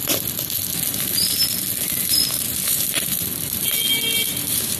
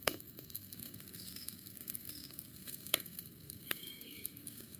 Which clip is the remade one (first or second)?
second